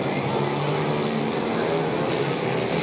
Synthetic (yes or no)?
no